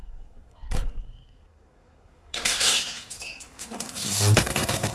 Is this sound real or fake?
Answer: fake